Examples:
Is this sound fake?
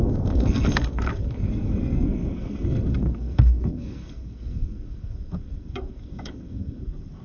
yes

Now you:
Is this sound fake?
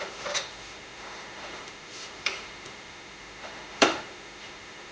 yes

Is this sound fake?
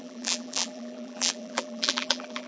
yes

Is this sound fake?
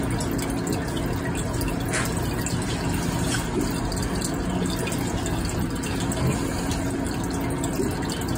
no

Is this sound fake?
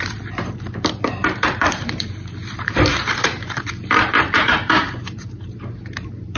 yes